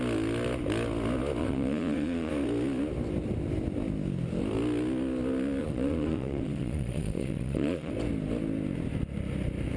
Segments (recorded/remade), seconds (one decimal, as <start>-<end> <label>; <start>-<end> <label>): 0.0-1.4 recorded; 1.4-2.3 remade; 2.3-5.6 recorded; 5.6-7.9 remade; 7.9-9.8 recorded